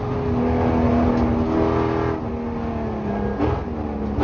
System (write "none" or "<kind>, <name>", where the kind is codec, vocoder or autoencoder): none